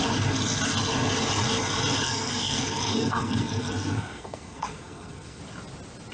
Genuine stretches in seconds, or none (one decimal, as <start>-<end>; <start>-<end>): 0.0-2.0; 5.4-6.1